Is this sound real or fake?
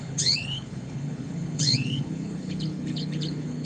fake